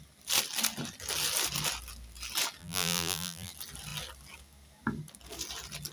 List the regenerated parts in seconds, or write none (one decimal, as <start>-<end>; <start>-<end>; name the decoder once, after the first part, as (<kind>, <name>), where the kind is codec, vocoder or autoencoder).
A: 2.6-3.5 (vocoder, BigVGAN v2)